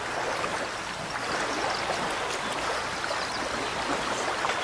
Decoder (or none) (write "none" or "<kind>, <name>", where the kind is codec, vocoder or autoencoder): none